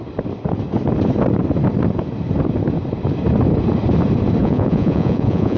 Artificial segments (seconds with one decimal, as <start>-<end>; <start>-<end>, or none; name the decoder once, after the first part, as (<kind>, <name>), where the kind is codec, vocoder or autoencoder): 4.4-5.6 (vocoder, Vocos)